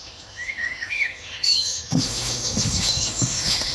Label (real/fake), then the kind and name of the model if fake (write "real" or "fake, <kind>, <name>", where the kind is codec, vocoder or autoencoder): fake, autoencoder, DAC-VAE